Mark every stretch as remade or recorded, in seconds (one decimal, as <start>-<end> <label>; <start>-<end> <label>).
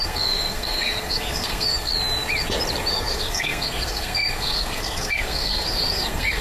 0.0-1.9 remade; 1.9-2.9 recorded; 2.9-6.4 remade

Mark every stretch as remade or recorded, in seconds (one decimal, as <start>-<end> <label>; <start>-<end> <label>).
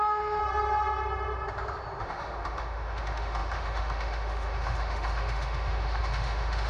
0.0-0.4 remade; 0.4-2.0 recorded; 2.0-6.7 remade